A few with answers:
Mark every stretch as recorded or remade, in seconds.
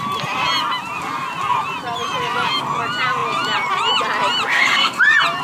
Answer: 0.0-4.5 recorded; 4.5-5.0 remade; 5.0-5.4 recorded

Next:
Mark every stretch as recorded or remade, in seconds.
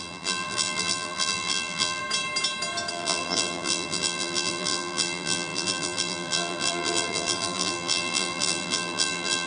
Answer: 0.0-2.0 remade; 2.0-2.9 recorded; 2.9-9.5 remade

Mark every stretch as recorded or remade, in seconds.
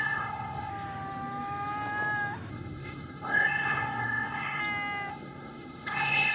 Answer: 0.0-0.7 remade; 0.7-2.5 recorded; 2.5-4.6 remade; 4.6-5.1 recorded; 5.1-6.3 remade